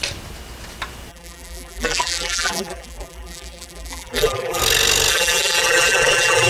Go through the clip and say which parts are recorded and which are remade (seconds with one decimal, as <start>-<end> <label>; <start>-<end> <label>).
0.0-1.1 recorded; 1.1-4.6 remade; 4.6-5.1 recorded; 5.1-6.5 remade

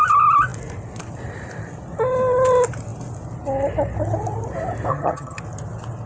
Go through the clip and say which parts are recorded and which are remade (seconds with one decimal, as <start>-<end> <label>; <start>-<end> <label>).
0.0-4.9 recorded; 4.9-5.4 remade; 5.4-6.1 recorded